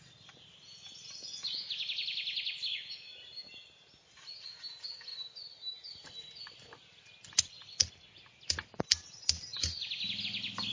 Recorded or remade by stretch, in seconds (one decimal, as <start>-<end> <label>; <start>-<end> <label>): 0.0-10.7 recorded